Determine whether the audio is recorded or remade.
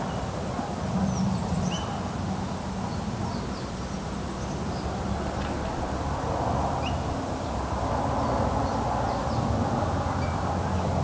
recorded